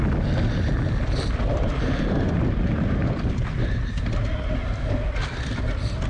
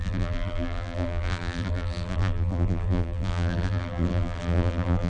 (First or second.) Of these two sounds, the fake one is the second